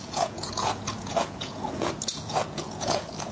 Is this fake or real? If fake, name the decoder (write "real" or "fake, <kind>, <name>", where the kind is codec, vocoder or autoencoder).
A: fake, vocoder, Vocos